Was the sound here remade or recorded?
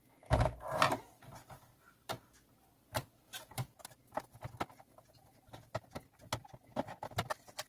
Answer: recorded